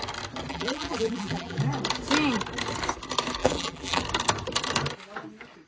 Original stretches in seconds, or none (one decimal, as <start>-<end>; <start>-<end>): 0.0-0.5; 1.6-3.4; 4.0-5.7